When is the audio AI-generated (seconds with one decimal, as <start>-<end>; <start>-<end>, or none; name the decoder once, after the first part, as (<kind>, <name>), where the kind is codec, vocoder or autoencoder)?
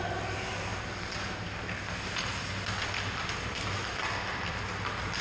none